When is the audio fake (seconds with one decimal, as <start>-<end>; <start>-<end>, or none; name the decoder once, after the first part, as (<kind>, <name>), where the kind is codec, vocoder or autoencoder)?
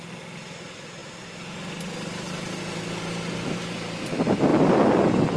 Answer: none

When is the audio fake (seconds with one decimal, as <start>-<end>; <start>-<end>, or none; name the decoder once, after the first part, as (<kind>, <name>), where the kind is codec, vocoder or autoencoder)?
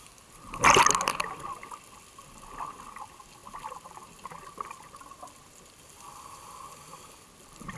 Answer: none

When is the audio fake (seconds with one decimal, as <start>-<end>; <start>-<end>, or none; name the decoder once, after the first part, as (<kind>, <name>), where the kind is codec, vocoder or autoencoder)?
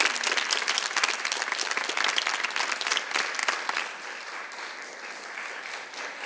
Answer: none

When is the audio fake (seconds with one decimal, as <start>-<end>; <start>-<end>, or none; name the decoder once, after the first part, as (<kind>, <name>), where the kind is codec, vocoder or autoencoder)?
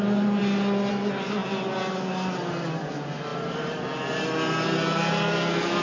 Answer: none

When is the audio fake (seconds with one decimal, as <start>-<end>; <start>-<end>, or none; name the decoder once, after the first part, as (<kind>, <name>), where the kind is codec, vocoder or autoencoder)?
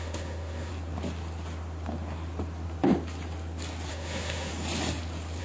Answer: 0.0-0.7 (autoencoder, DAC-VAE); 3.9-4.5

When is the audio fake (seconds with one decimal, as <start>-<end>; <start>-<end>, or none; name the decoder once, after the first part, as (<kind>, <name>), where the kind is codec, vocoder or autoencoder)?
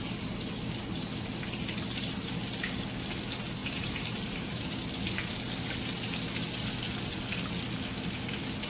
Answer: 3.6-4.7 (vocoder, BigVGAN v2)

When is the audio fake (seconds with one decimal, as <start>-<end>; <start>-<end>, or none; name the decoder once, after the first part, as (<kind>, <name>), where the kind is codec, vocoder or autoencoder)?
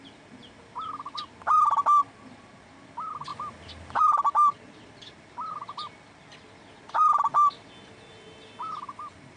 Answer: none